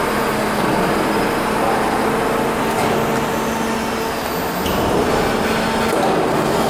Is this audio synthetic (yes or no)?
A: no